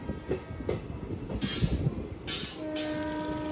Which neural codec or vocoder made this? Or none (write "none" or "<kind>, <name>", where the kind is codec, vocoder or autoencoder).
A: none